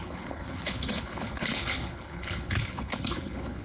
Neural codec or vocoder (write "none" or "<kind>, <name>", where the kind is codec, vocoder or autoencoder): codec, HILCodec